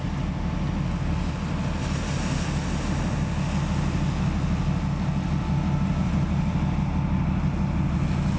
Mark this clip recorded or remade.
recorded